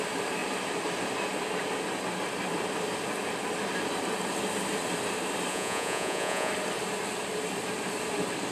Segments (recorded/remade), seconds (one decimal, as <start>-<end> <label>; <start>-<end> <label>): 0.0-5.5 recorded; 5.5-6.5 remade; 6.5-8.5 recorded